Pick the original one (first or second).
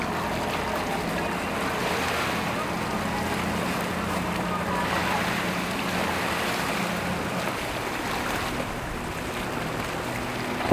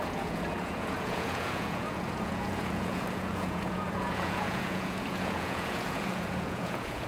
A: first